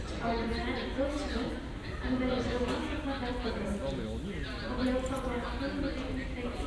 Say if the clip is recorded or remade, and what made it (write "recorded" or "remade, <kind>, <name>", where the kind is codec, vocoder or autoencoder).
recorded